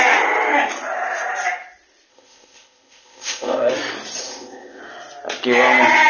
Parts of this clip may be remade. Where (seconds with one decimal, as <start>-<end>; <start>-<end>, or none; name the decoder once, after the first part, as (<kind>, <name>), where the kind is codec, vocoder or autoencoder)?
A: 2.1-3.7 (codec, ZipCodec); 4.2-4.8